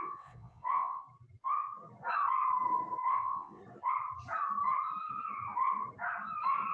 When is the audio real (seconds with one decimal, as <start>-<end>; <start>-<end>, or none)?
1.0-3.1; 3.6-6.7